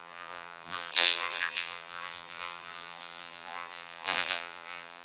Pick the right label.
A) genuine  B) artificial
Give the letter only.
B